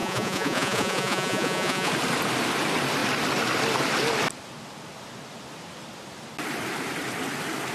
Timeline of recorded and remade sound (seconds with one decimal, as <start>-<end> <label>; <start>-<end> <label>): 0.0-1.9 remade; 1.9-7.7 recorded